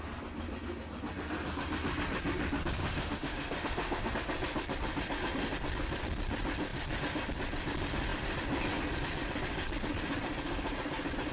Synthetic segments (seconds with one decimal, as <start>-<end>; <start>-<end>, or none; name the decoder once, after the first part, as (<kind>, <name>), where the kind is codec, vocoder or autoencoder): 2.8-4.1 (autoencoder, DAC-VAE)